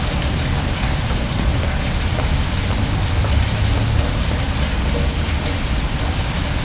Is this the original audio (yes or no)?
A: yes